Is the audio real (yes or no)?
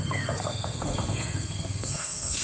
no